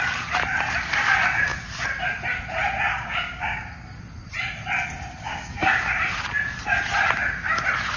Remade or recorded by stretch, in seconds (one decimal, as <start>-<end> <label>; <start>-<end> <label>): 0.0-2.9 recorded; 2.9-4.0 remade; 4.0-5.2 recorded; 5.2-5.9 remade; 5.9-8.0 recorded